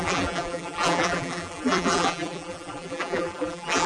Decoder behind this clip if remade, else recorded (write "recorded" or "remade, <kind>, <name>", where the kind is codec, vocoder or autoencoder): remade, vocoder, BigVGAN v2